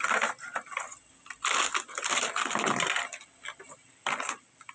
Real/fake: real